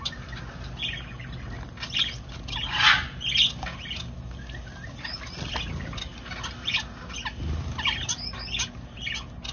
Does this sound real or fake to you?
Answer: real